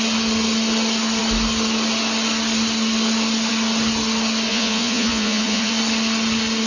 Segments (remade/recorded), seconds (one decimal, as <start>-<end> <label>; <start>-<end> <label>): 0.0-4.5 recorded; 4.5-5.7 remade; 5.7-6.7 recorded